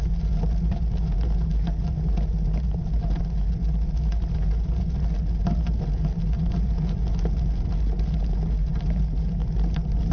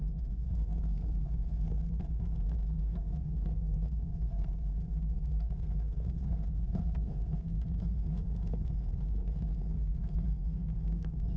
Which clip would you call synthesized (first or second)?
second